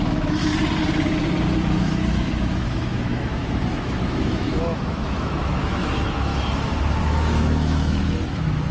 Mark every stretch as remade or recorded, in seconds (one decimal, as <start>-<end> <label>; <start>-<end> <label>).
0.0-0.4 remade; 0.4-1.8 recorded; 1.8-6.3 remade; 6.3-7.1 recorded; 7.1-8.7 remade